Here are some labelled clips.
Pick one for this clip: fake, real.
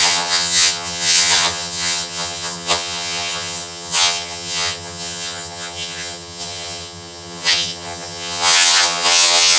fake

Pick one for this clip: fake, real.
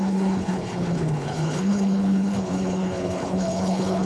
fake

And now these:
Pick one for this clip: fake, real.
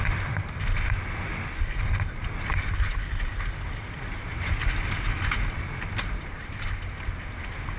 real